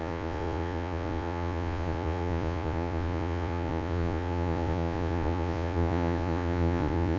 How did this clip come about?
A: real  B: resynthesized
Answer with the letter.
B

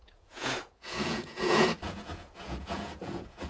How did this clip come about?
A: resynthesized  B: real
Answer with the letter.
A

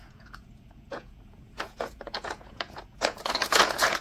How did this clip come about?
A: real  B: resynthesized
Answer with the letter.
B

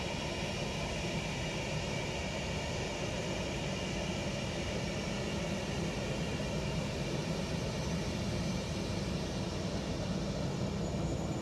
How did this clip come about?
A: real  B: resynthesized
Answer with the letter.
A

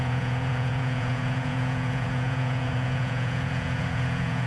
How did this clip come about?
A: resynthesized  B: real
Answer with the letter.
A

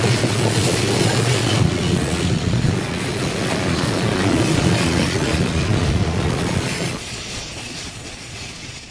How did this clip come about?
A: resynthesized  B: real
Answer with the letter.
A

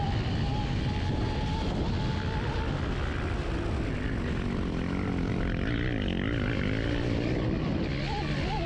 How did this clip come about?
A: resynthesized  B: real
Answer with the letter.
B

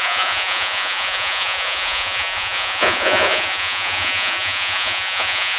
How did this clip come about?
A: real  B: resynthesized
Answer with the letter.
B